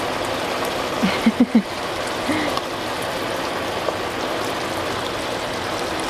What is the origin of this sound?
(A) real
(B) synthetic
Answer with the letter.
A